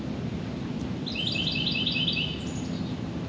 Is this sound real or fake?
real